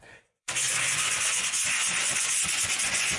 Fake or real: fake